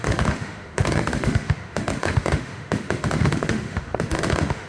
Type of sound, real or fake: fake